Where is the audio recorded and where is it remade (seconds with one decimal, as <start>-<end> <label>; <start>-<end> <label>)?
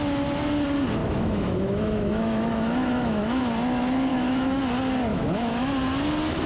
0.0-1.0 recorded; 1.0-3.4 remade; 3.4-4.1 recorded; 4.1-4.6 remade; 4.6-5.1 recorded; 5.1-5.7 remade; 5.7-6.5 recorded